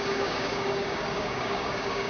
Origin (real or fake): fake